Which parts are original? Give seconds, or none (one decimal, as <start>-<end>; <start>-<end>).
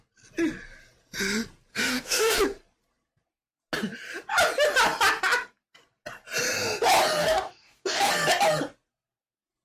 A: 0.0-1.7; 2.4-7.2; 8.1-9.6